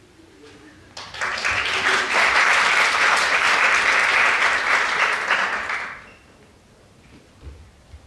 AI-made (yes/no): no